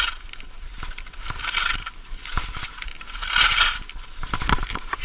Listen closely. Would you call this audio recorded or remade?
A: recorded